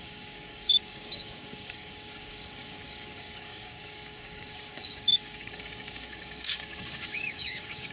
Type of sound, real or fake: fake